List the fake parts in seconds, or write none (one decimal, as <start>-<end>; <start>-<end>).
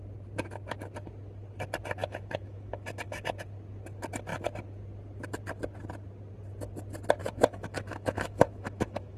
2.0-3.3; 7.2-9.2